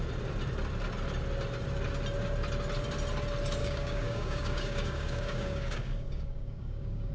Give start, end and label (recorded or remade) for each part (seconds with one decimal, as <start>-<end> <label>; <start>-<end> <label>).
0.0-3.6 recorded; 3.6-7.1 remade